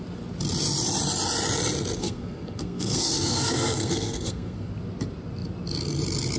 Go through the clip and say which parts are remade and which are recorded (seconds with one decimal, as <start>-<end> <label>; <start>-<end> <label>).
0.0-2.0 recorded; 2.0-4.7 remade; 4.7-6.4 recorded